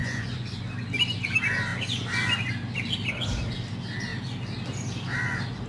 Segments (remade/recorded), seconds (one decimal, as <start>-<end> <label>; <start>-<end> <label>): 0.0-0.6 remade; 0.6-5.7 recorded